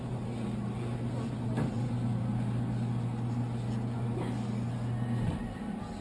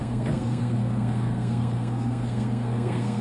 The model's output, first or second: second